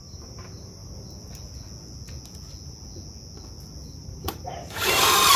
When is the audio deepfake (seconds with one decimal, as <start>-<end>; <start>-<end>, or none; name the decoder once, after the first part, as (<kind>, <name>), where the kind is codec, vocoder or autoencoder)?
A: 0.0-0.8 (vocoder, BigVGAN v2); 4.0-5.4